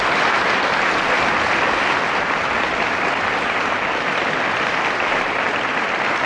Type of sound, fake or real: real